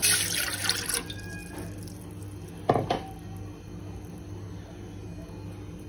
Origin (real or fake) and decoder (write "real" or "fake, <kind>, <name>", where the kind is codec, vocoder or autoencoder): real